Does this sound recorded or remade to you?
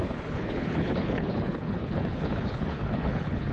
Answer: remade